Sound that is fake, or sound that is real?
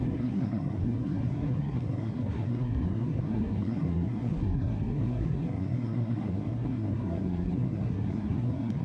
fake